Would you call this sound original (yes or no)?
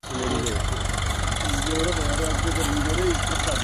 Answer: yes